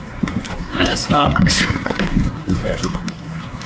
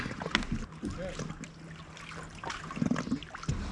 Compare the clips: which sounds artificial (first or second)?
first